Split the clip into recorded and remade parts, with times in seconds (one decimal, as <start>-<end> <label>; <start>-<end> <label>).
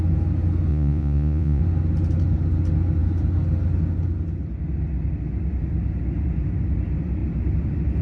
0.0-0.7 recorded; 0.7-1.6 remade; 1.6-8.0 recorded